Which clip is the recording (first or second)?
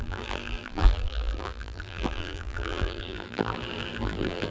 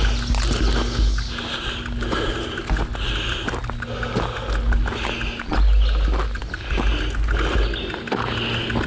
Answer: second